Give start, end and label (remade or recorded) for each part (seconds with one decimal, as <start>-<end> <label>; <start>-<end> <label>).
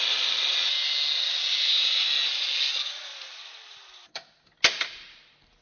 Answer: 0.0-3.1 recorded; 3.1-4.6 remade; 4.6-5.6 recorded